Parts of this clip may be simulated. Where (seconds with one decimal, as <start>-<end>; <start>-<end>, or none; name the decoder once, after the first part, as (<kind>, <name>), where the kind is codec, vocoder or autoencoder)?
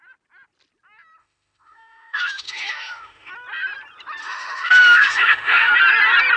1.2-3.3 (autoencoder, DAC-VAE); 4.2-5.7